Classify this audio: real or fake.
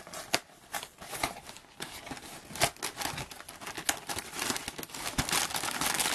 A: real